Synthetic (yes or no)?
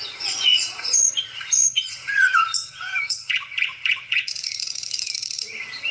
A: yes